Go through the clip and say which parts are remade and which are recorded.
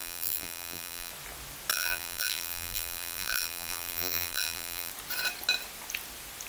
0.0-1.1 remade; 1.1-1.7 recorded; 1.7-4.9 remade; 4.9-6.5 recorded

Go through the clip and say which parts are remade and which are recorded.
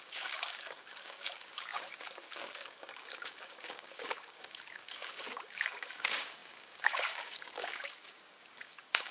0.0-9.1 remade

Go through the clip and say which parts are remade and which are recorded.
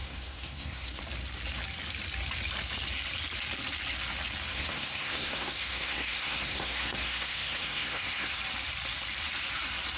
0.0-1.0 remade; 1.0-4.5 recorded; 4.5-8.3 remade; 8.3-10.0 recorded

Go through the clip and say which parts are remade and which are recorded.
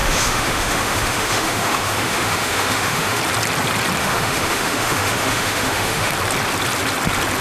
0.0-3.2 remade; 3.2-4.0 recorded; 4.0-6.1 remade; 6.1-7.4 recorded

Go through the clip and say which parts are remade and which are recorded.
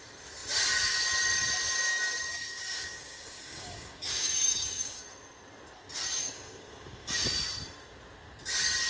0.0-1.9 recorded; 1.9-5.0 remade; 5.0-6.2 recorded; 6.2-7.1 remade; 7.1-8.9 recorded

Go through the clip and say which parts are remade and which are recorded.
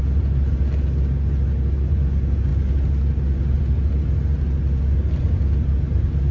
0.0-6.3 recorded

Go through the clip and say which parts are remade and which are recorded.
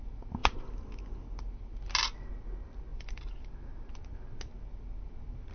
0.0-2.9 recorded; 2.9-3.9 remade; 3.9-5.5 recorded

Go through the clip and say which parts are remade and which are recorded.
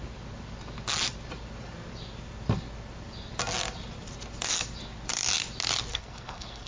0.0-5.9 recorded; 5.9-6.7 remade